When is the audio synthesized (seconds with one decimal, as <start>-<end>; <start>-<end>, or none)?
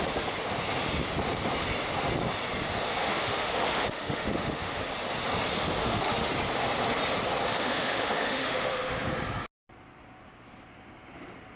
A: 3.0-4.8; 5.8-6.3; 7.5-9.1